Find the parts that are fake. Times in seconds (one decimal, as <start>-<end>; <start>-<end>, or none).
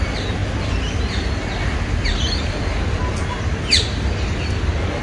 none